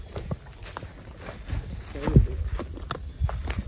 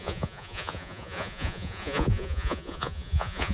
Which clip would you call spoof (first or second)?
second